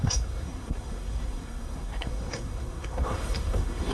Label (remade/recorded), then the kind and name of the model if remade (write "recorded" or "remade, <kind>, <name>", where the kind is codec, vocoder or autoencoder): remade, codec, SNAC